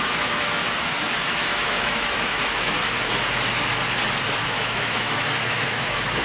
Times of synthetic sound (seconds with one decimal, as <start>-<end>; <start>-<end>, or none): 0.0-0.6; 1.1-2.8; 4.4-6.2